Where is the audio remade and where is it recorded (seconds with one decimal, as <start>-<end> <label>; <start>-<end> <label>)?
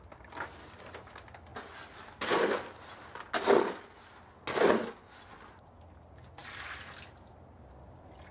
0.0-8.3 recorded